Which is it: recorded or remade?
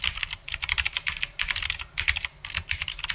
recorded